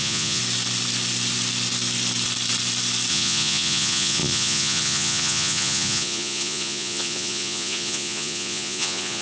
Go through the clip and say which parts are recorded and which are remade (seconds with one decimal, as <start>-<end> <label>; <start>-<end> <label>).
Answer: 0.0-0.4 remade; 0.4-3.1 recorded; 3.1-9.2 remade